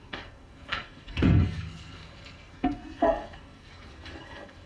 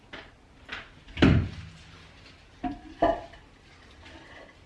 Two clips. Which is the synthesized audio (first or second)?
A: first